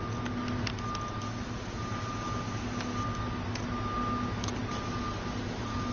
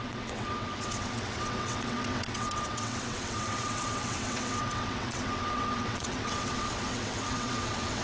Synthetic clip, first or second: second